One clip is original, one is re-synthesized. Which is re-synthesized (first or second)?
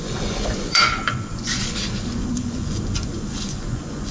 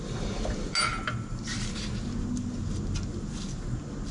first